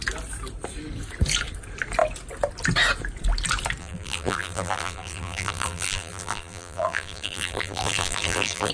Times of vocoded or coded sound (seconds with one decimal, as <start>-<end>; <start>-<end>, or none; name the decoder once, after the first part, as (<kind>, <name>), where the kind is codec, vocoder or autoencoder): 3.8-8.7 (vocoder, BigVGAN v2)